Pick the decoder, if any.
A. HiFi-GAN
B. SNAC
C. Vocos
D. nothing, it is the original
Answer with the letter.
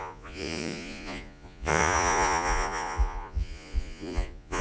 C